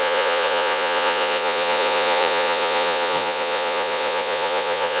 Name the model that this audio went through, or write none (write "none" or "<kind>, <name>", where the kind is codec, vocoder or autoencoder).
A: vocoder, Vocos